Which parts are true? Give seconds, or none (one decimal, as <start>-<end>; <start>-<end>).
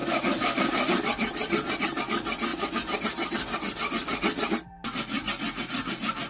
2.0-6.3